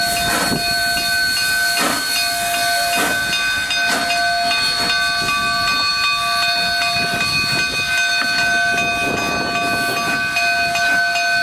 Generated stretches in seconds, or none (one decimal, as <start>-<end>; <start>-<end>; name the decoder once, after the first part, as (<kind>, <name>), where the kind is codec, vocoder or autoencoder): none